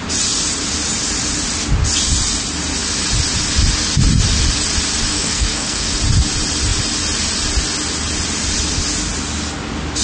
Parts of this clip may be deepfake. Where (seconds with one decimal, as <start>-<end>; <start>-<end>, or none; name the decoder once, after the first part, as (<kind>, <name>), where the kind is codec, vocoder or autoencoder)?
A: 5.1-5.9 (codec, SNAC)